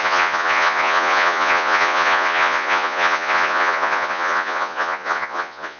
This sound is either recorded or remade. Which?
remade